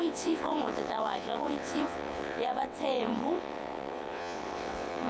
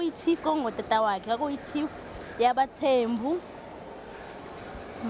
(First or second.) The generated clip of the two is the first